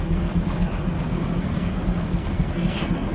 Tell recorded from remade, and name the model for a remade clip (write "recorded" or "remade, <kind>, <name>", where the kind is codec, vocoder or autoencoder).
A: remade, codec, SNAC